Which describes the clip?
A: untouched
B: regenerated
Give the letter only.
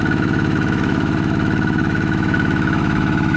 B